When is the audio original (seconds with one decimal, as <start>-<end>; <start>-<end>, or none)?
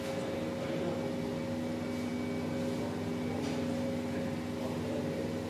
0.0-5.5